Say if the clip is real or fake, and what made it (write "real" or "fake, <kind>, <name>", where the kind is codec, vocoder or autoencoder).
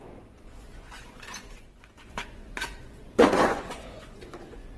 fake, vocoder, Vocos